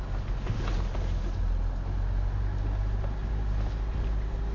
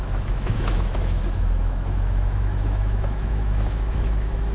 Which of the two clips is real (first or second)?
first